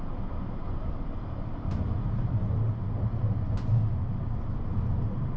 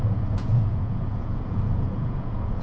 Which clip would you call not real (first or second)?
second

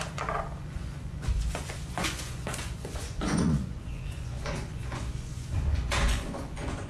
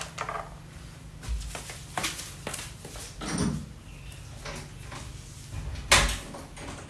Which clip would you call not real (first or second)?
first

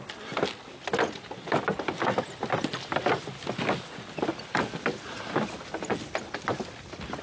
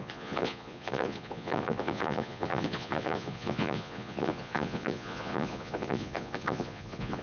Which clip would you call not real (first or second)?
second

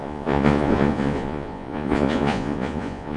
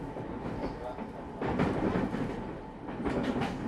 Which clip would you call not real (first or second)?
first